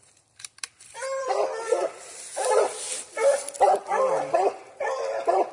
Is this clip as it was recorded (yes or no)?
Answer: no